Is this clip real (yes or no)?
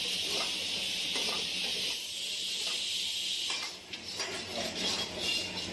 yes